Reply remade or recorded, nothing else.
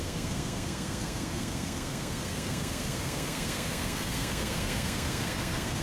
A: remade